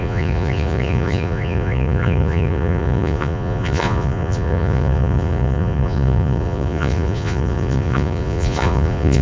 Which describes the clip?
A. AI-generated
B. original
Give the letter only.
A